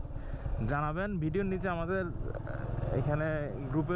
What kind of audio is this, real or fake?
real